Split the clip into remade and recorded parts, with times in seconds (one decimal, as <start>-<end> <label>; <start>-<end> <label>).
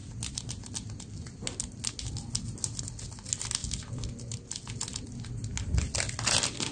0.0-6.7 recorded